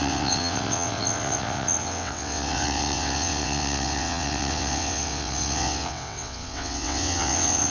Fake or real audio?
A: fake